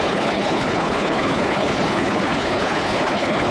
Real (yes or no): no